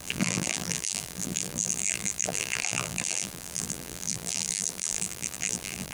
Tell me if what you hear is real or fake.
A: fake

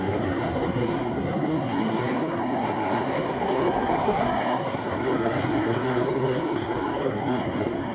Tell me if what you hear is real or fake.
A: fake